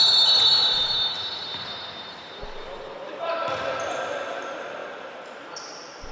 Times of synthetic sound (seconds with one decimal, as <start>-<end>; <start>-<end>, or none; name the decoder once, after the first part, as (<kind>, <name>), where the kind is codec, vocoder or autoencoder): none